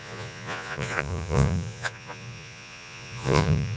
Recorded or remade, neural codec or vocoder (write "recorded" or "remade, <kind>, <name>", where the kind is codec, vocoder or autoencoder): remade, vocoder, Vocos